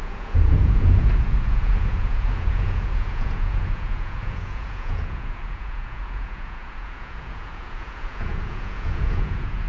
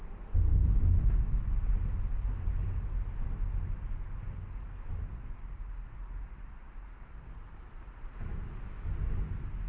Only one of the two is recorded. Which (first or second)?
second